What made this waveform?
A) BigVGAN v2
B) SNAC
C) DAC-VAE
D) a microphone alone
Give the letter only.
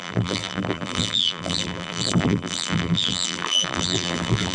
A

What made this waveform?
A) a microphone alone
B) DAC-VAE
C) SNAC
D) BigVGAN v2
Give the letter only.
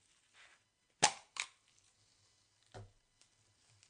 A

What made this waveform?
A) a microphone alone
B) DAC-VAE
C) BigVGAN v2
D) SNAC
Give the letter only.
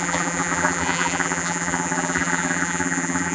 C